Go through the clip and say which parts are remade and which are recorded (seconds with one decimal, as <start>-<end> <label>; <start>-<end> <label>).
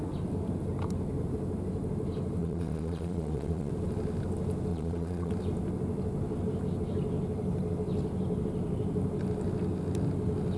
0.0-2.4 recorded; 2.4-3.7 remade; 3.7-4.7 recorded; 4.7-5.3 remade; 5.3-10.6 recorded